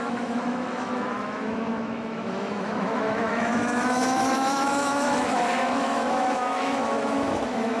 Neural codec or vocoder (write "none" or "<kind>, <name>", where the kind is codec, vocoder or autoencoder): autoencoder, DAC-VAE